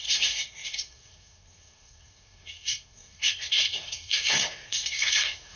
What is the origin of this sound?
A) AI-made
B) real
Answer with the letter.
A